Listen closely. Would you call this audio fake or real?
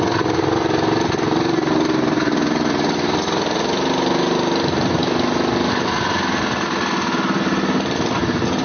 real